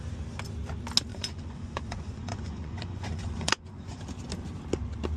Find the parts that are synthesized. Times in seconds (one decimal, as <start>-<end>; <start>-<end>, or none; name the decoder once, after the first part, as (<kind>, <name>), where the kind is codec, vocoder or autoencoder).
1.1-4.0 (vocoder, Vocos)